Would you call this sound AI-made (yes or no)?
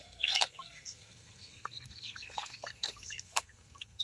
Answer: yes